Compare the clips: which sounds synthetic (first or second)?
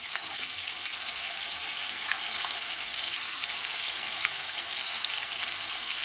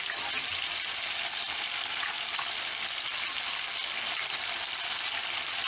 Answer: first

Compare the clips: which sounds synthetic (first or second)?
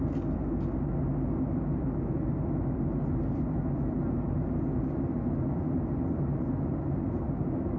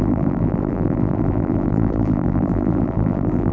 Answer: second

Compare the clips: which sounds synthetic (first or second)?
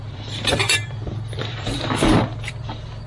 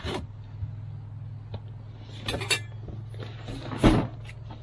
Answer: first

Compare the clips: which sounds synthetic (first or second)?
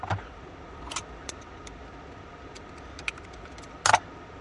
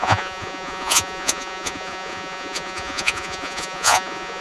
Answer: second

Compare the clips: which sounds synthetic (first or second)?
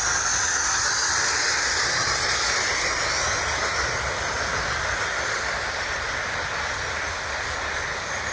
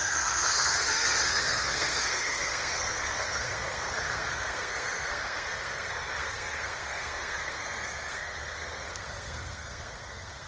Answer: second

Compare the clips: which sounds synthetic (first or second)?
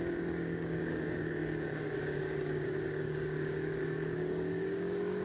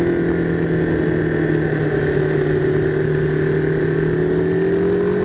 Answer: first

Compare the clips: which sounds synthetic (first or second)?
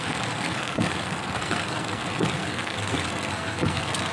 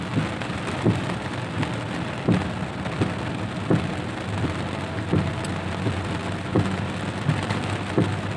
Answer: first